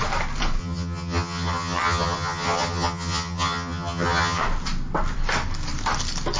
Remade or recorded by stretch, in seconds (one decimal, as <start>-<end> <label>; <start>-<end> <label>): 0.0-0.6 recorded; 0.6-4.4 remade; 4.4-6.4 recorded